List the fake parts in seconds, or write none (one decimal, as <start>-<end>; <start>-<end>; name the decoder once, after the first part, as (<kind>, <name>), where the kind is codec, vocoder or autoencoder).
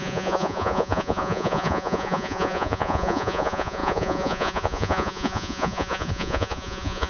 0.0-7.1 (vocoder, Vocos)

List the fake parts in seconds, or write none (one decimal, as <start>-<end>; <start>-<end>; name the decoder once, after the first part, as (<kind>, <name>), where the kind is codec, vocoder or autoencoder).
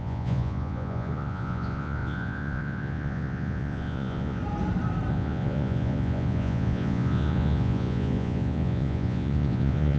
0.0-4.4 (vocoder, Vocos); 5.1-10.0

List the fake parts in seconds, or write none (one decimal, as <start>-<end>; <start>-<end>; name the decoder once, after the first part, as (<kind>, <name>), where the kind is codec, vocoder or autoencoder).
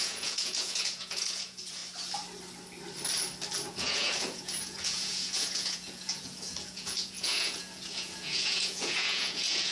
0.0-1.8 (vocoder, Vocos); 3.7-9.7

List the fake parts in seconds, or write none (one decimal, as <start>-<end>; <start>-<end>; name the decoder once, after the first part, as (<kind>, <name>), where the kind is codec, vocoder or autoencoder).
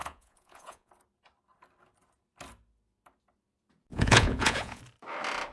0.0-0.9 (vocoder, Vocos); 3.9-4.8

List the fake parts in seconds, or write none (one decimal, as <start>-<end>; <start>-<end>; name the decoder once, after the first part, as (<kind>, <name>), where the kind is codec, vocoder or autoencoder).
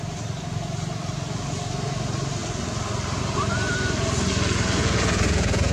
4.8-5.7 (vocoder, Vocos)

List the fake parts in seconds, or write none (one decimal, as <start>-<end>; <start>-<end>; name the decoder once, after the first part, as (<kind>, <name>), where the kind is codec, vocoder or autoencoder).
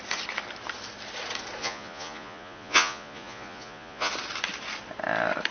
1.6-4.1 (vocoder, Vocos)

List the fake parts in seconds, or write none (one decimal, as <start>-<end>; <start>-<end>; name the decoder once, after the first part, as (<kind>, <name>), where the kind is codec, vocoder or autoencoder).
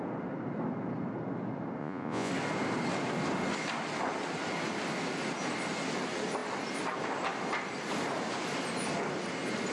1.8-2.3 (vocoder, Vocos)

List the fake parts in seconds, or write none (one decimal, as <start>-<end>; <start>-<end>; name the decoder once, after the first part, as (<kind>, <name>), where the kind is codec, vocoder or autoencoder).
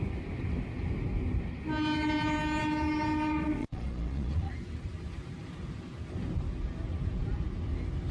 3.6-4.5 (vocoder, Vocos)